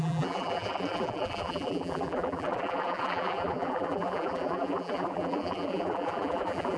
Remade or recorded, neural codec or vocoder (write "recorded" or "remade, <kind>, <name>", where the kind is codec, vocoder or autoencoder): remade, vocoder, BigVGAN v2